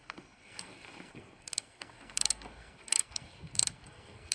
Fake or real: fake